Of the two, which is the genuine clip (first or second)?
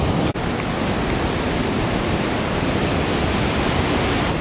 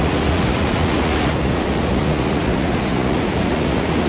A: first